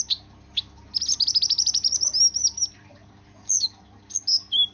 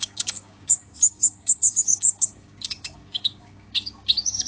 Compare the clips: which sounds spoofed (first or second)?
second